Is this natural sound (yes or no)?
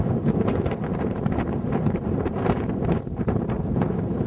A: no